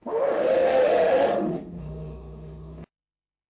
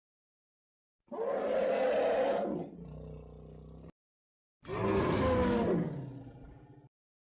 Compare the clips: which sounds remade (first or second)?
first